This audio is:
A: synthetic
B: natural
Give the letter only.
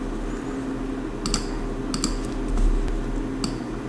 B